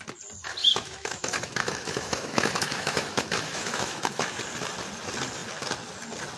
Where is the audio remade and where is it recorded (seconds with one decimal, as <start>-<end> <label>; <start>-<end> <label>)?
0.0-0.6 recorded; 0.6-4.4 remade; 4.4-6.4 recorded